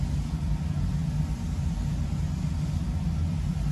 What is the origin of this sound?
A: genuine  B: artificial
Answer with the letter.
A